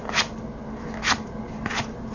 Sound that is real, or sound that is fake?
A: real